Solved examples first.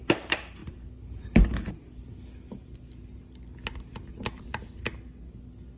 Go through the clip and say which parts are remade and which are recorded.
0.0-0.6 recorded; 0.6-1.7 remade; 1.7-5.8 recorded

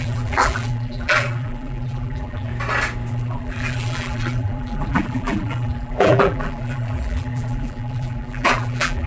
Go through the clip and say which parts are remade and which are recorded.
0.0-2.5 remade; 2.5-3.1 recorded; 3.1-9.1 remade

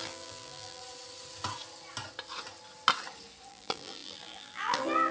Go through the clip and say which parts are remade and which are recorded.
0.0-0.8 remade; 0.8-3.5 recorded; 3.5-5.1 remade

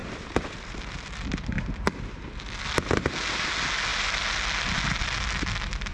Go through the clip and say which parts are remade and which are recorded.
0.0-1.6 remade; 1.6-5.9 recorded